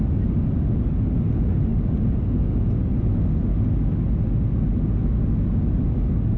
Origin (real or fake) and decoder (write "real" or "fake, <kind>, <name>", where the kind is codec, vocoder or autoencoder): real